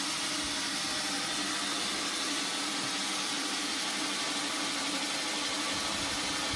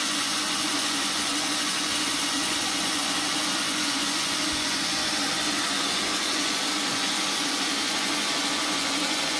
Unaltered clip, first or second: first